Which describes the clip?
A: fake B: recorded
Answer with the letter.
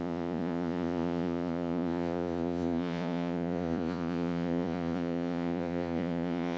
A